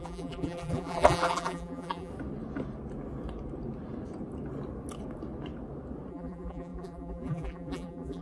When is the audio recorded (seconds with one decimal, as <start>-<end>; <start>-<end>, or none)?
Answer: 2.1-6.1